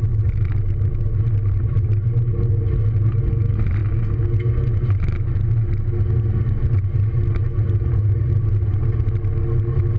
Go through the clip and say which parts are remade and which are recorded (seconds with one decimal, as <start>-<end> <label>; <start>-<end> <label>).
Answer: 0.0-10.0 recorded